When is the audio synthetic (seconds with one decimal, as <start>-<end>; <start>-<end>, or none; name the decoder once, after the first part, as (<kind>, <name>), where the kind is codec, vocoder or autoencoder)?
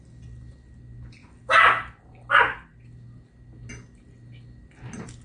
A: none